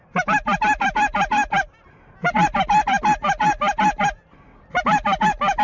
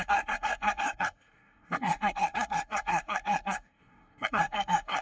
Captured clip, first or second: first